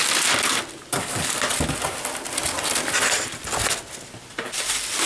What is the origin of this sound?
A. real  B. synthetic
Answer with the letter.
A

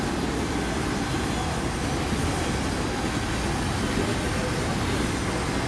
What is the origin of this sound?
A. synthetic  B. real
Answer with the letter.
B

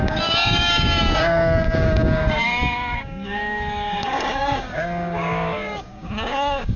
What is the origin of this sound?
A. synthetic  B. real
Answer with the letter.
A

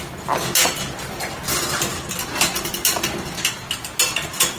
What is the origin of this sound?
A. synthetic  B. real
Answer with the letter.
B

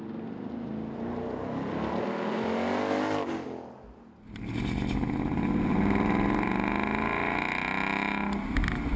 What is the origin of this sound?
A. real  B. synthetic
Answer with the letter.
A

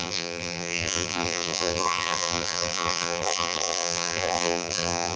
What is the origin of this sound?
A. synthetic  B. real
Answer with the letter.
A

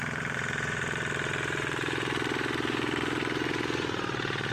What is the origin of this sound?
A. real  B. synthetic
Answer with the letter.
B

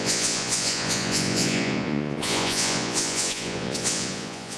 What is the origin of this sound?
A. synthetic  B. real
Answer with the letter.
A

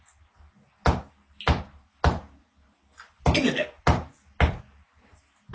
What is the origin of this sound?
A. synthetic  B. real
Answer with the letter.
B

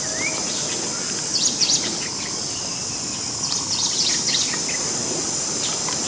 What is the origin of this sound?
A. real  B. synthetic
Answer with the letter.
A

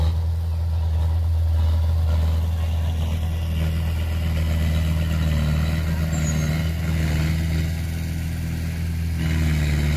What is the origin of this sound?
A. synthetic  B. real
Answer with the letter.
B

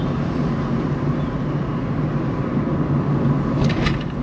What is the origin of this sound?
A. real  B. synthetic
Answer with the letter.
A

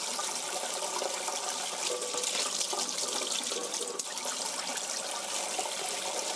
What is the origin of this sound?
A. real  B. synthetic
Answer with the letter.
A